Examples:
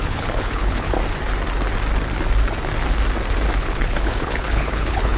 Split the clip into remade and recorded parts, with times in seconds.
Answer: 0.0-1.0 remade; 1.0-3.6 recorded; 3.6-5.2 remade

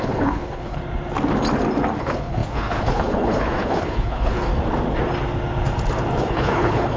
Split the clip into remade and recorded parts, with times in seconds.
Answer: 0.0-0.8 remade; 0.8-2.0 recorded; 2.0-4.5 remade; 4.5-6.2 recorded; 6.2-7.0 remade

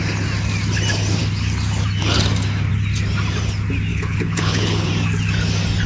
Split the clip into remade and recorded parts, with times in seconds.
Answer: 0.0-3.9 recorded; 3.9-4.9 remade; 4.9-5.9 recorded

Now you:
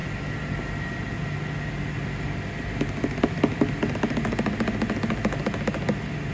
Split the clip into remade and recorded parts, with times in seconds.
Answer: 0.0-6.3 recorded

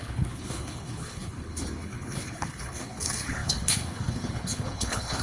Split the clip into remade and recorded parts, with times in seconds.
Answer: 0.0-5.2 remade

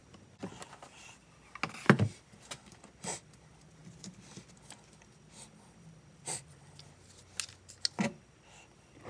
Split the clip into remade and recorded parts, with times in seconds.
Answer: 0.0-9.1 recorded

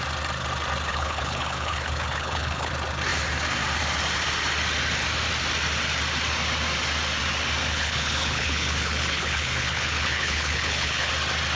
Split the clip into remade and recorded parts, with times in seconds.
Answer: 0.0-0.9 recorded; 0.9-2.7 remade; 2.7-7.7 recorded; 7.7-11.1 remade; 11.1-11.6 recorded